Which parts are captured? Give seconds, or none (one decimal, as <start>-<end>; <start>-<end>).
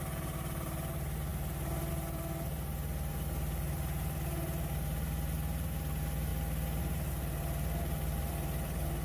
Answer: 6.3-6.8